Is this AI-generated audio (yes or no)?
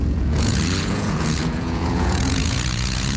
yes